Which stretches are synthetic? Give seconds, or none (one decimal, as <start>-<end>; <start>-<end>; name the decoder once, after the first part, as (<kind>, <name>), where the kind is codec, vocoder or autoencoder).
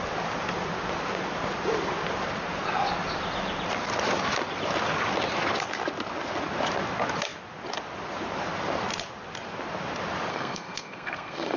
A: 10.3-11.6 (codec, SNAC)